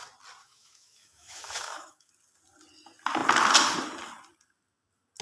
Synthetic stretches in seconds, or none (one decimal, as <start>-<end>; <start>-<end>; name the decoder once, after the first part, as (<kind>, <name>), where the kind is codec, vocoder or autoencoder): 0.4-2.1 (autoencoder, DAC-VAE)